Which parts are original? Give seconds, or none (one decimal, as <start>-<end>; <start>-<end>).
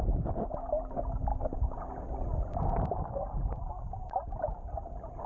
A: 0.0-5.3